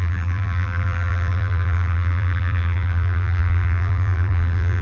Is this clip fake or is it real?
fake